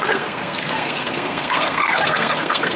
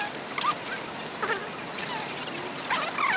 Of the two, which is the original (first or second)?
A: second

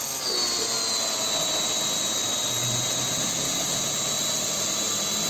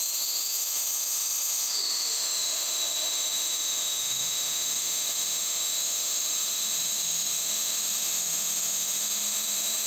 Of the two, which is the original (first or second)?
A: first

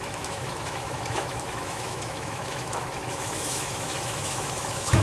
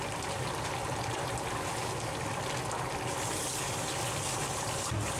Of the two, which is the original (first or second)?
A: second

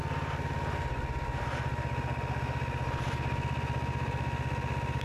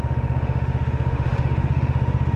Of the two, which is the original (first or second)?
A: first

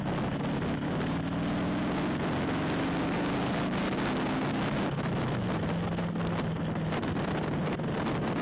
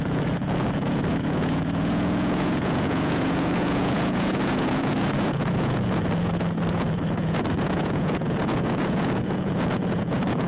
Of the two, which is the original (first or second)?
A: first